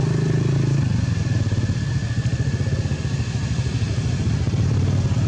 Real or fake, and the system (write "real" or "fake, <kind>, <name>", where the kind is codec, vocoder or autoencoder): real